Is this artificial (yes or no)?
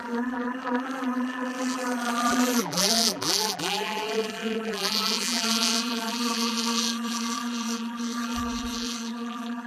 yes